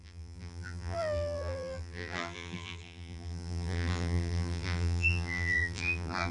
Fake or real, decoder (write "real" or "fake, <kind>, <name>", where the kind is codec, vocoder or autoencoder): fake, vocoder, BigVGAN v2